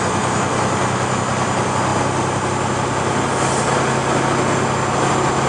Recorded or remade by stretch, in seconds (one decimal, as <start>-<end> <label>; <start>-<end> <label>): 0.0-5.5 recorded